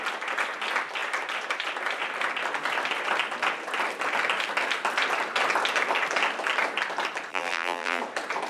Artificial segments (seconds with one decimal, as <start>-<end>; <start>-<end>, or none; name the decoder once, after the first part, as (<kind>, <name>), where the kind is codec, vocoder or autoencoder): 7.3-8.0 (vocoder, BigVGAN v2)